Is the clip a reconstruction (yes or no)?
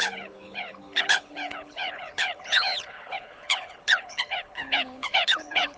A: yes